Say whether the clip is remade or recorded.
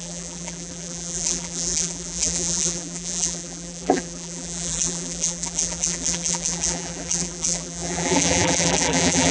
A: remade